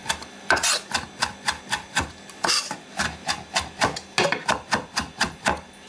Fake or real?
real